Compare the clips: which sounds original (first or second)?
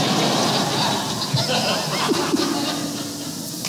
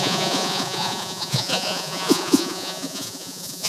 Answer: first